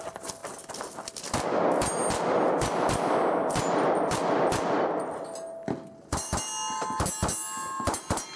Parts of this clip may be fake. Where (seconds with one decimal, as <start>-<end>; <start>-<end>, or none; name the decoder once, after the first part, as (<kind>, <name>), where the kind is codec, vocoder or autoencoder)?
none